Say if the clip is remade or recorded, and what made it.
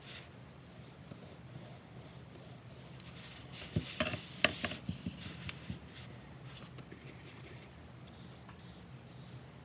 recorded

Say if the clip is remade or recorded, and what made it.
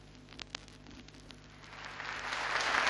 recorded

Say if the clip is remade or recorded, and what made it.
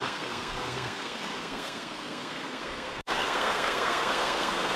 remade, codec, SNAC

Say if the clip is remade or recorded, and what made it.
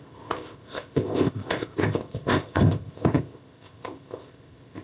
remade, codec, ZipCodec